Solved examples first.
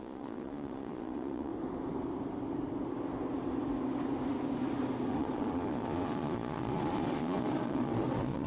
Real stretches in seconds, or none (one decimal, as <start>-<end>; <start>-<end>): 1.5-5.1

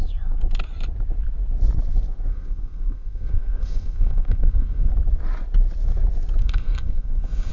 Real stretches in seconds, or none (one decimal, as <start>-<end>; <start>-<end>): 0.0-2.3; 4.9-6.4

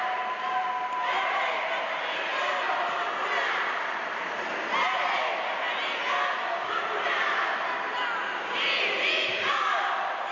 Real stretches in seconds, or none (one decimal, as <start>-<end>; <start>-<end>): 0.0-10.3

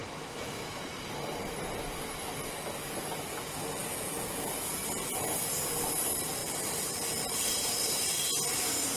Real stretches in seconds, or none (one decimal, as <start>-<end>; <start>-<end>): 0.8-9.0

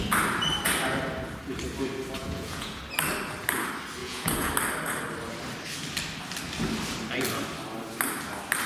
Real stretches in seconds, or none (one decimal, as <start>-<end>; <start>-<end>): 0.0-2.2; 2.8-4.0; 4.5-8.7

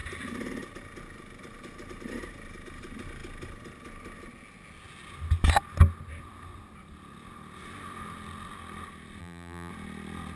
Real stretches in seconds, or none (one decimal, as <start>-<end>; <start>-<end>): 0.0-9.2; 9.7-10.4

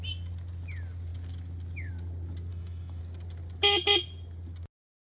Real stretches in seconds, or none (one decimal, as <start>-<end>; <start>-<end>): 0.0-2.5; 3.0-5.0

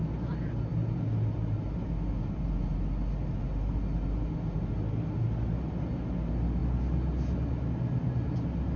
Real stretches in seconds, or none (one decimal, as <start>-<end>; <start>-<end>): 0.0-8.8